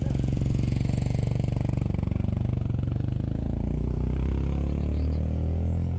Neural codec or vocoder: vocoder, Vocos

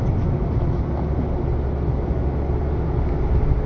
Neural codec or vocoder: none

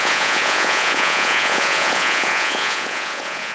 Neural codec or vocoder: vocoder, Vocos